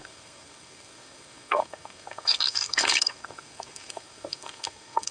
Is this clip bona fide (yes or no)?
no